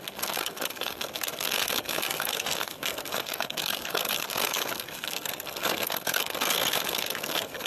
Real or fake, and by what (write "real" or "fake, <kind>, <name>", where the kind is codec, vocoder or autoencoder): fake, codec, SNAC